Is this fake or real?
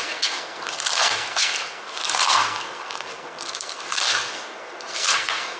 fake